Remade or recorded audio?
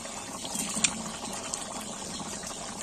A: recorded